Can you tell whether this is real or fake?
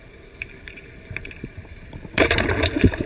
fake